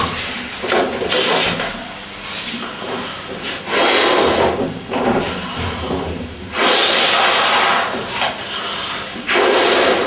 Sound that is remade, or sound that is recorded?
recorded